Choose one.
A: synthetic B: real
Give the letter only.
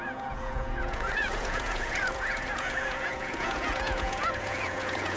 A